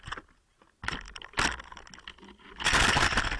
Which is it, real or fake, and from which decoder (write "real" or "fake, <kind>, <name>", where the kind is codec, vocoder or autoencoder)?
real